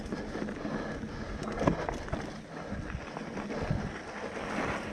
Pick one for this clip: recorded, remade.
recorded